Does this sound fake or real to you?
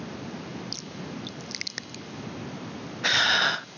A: real